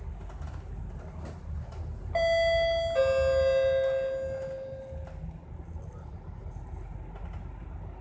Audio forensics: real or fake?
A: real